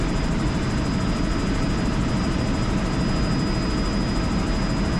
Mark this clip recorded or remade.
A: recorded